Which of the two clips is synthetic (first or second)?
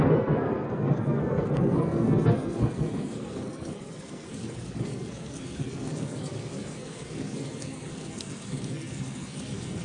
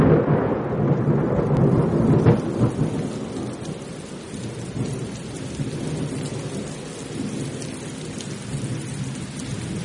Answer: first